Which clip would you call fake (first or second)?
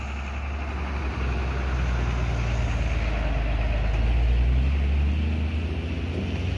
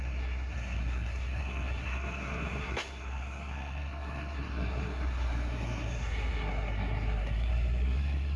second